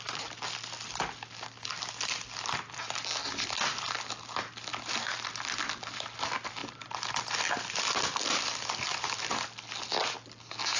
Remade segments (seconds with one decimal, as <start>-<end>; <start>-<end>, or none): none